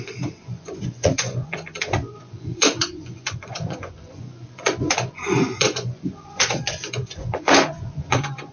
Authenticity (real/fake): fake